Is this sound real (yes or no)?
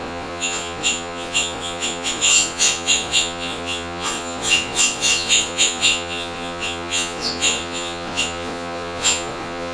no